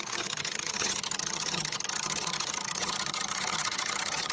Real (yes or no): no